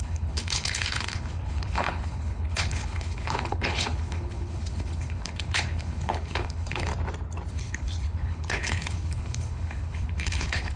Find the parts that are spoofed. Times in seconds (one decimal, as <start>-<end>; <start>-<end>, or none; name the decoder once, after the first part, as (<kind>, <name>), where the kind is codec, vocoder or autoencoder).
0.0-6.9 (codec, HILCodec); 7.5-10.8